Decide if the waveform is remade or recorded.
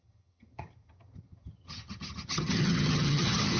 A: remade